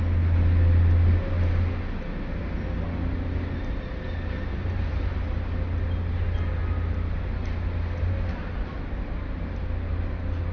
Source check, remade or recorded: recorded